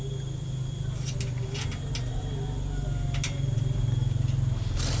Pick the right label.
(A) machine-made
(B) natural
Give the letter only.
B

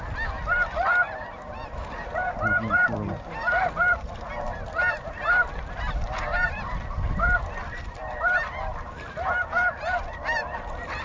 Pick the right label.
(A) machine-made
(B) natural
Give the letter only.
A